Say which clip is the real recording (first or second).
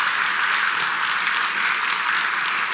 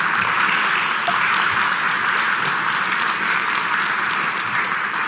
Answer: first